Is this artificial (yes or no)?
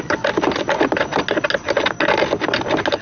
no